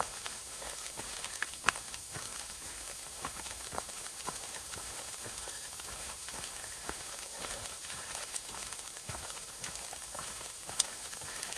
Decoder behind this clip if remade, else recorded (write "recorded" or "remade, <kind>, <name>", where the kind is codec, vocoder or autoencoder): remade, autoencoder, DAC-VAE